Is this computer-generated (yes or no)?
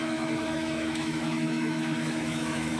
yes